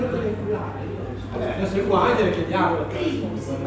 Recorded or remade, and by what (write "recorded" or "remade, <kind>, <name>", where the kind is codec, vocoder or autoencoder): recorded